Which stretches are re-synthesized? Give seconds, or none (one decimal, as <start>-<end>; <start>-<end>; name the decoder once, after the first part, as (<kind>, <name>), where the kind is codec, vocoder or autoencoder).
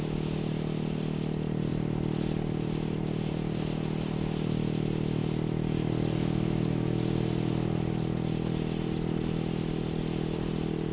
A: none